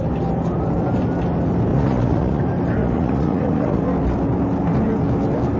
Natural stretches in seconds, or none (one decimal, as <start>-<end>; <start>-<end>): 0.0-1.7; 2.4-2.8; 3.8-5.6